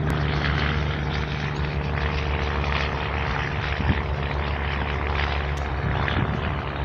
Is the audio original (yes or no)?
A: yes